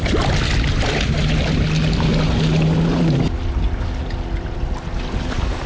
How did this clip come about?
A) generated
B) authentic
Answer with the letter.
B